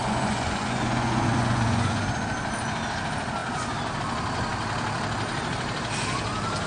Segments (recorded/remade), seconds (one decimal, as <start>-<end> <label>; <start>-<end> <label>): 0.0-2.0 remade; 2.0-6.7 recorded